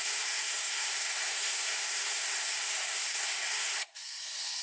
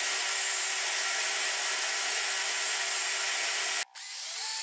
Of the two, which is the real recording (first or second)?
second